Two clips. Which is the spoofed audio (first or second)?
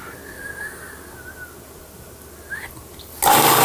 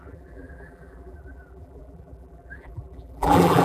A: second